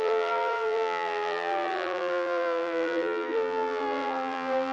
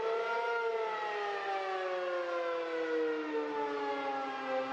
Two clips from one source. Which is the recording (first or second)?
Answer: second